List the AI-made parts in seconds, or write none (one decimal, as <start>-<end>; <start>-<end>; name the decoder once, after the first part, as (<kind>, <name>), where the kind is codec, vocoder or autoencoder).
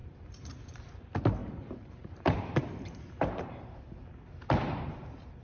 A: 0.0-0.8 (vocoder, BigVGAN v2); 1.4-3.8